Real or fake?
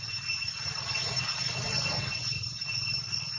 real